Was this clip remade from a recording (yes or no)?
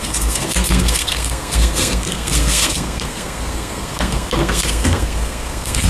yes